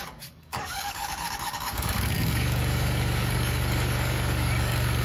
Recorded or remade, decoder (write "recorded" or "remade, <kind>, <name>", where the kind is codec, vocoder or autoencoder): remade, codec, DAC